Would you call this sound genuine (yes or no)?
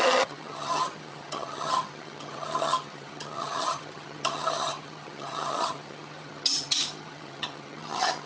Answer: no